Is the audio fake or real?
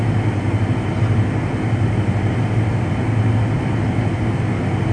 real